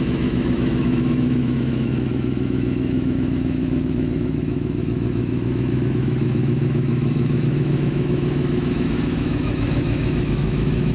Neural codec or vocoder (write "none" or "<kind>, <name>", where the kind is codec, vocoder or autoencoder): autoencoder, DAC-VAE